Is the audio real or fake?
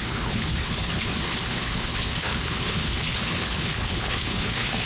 fake